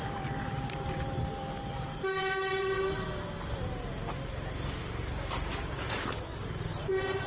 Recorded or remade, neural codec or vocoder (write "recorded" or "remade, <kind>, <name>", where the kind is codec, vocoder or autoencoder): recorded